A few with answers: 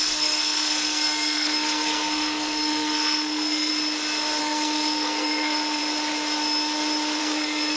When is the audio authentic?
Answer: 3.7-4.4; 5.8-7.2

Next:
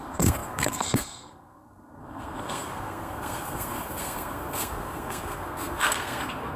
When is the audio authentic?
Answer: none

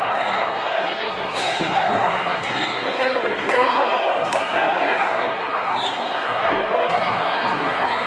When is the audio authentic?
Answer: none

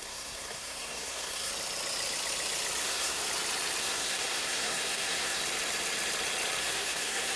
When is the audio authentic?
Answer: 1.5-2.8; 3.2-3.8; 5.4-6.6

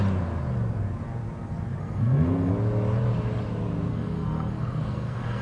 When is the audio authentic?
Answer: 0.0-1.8; 2.5-3.9